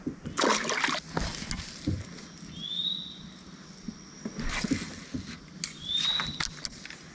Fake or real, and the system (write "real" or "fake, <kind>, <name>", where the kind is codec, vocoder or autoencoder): real